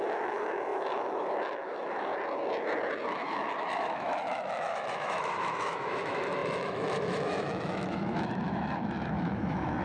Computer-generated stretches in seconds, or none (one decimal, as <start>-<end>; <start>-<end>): 0.0-2.1; 3.1-9.8